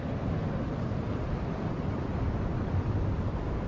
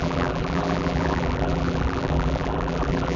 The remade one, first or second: second